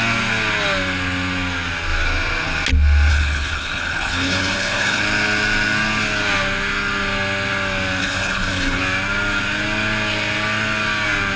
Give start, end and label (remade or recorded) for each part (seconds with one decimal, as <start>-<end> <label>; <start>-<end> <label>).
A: 0.0-3.1 recorded; 3.1-5.0 remade; 5.0-8.0 recorded; 8.0-8.8 remade; 8.8-11.4 recorded